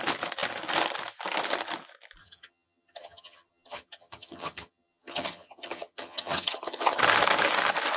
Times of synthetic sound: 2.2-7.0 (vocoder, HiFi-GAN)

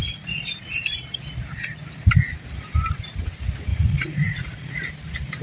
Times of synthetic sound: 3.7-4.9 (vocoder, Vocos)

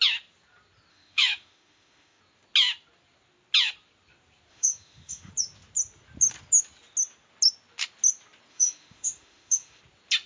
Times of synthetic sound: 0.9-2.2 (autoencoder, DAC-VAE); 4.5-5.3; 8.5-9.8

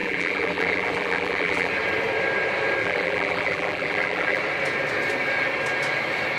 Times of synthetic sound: 0.0-1.7 (vocoder, BigVGAN v2); 2.8-4.4

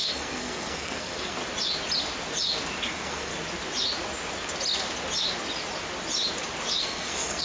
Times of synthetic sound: 0.0-1.4 (codec, SNAC); 2.9-3.3; 6.8-7.4